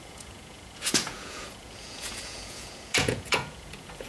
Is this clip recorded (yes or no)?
no